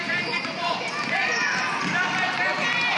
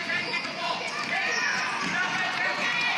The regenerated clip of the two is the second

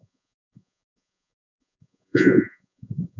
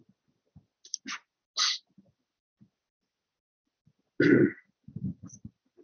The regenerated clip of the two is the first